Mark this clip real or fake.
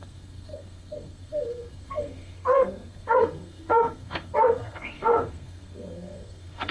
fake